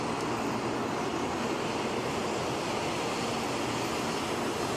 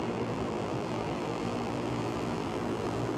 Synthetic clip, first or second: second